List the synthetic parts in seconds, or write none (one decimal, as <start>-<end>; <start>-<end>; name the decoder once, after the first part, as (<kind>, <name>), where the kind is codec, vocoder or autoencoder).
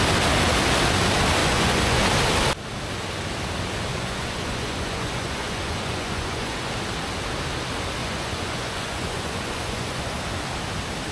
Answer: 1.4-2.0 (vocoder, Vocos); 3.9-6.7; 8.0-10.2